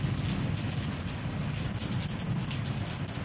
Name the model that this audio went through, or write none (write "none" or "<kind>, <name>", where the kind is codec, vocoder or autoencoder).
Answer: none